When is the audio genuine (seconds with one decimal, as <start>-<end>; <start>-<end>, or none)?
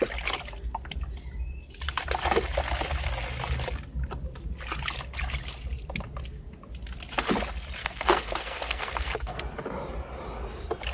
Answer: 0.0-7.8; 9.4-10.9